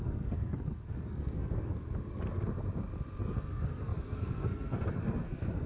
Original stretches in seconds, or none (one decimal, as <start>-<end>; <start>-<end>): 1.7-3.2